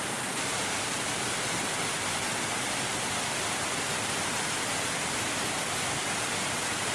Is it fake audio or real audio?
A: real